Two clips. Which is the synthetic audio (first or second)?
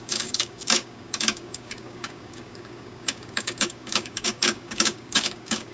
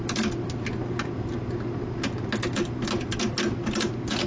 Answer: first